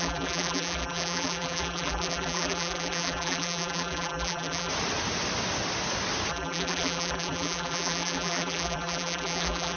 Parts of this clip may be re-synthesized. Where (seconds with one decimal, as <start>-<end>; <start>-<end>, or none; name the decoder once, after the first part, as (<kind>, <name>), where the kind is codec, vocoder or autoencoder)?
0.0-4.7 (vocoder, BigVGAN v2); 6.3-9.8